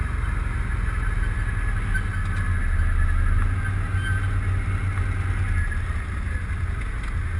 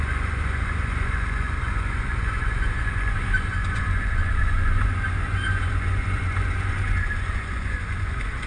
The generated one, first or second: second